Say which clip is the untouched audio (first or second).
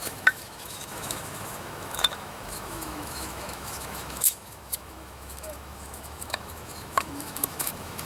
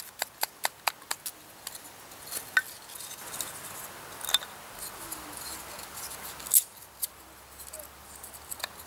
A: second